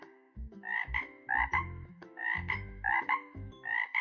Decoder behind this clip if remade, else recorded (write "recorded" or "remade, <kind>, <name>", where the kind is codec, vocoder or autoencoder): remade, autoencoder, DAC-VAE